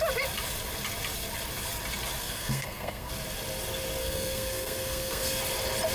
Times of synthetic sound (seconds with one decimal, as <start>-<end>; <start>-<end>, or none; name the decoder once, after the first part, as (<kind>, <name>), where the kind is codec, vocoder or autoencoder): 2.2-3.1 (codec, SNAC); 4.0-5.4